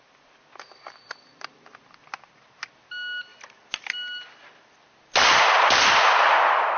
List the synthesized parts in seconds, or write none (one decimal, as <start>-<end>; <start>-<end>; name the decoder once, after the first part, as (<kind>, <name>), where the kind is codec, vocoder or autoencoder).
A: none